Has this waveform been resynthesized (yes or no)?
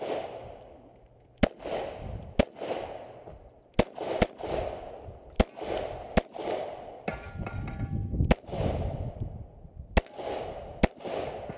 no